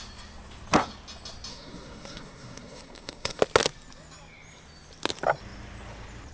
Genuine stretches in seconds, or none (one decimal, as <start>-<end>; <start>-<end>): 0.0-1.5; 3.4-6.3